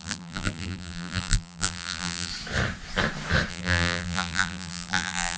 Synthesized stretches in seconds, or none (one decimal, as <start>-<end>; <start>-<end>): 0.0-2.3; 3.5-5.4